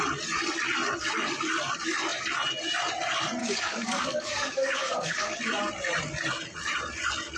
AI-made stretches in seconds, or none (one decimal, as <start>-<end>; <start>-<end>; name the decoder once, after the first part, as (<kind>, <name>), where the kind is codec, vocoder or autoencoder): 3.4-5.4 (codec, DAC)